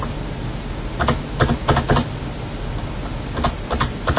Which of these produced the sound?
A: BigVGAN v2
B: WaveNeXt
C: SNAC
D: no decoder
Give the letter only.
D